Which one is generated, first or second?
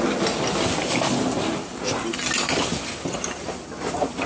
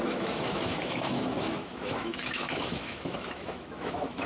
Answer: second